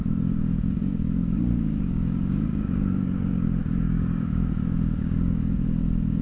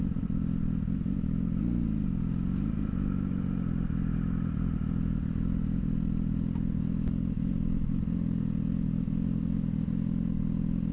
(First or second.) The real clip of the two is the second